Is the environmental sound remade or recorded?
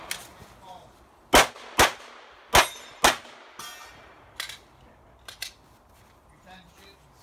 recorded